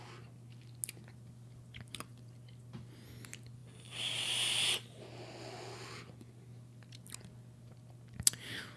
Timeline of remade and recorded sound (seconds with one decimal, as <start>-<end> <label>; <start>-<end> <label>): 0.0-8.8 recorded